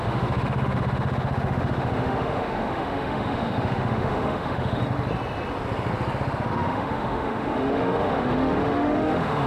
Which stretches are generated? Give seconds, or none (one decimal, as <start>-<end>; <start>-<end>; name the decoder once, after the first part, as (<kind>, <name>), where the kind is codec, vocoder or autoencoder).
0.0-4.8 (autoencoder, DAC-VAE); 6.5-9.5